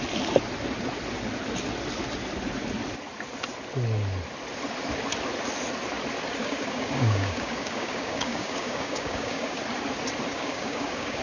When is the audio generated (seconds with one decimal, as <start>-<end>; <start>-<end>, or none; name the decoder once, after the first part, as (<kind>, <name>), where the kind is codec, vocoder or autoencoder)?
6.4-9.6 (codec, DAC); 10.3-11.2